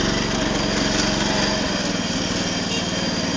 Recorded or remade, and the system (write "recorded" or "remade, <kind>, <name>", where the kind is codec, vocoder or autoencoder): recorded